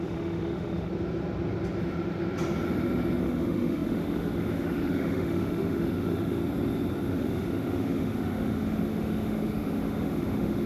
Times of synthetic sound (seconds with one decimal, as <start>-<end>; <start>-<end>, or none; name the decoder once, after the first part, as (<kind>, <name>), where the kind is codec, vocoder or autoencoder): 0.0-0.9 (autoencoder, DAC-VAE); 3.2-6.4; 7.1-10.7